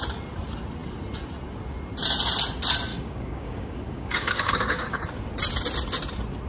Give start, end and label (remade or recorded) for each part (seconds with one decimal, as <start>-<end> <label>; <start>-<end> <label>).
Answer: 0.0-2.9 recorded; 2.9-5.2 remade; 5.2-6.5 recorded